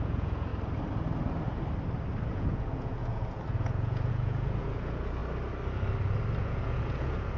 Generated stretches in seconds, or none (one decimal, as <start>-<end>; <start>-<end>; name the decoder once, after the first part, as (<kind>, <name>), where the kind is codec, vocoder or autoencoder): 0.0-0.5 (vocoder, Vocos); 2.3-5.2; 6.4-7.4